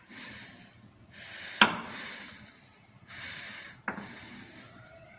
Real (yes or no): yes